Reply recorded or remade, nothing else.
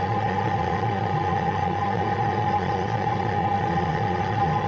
remade